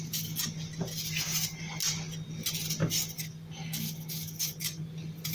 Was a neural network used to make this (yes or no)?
no